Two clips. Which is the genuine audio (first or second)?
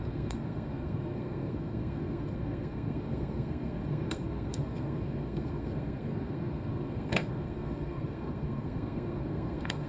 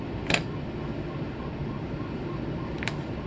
second